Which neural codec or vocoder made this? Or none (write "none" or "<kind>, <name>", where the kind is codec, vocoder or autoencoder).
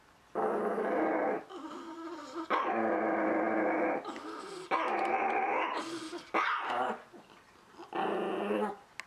none